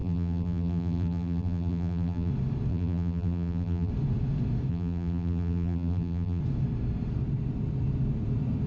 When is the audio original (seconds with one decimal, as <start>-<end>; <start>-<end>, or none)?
2.3-2.7; 3.9-4.7; 6.4-8.7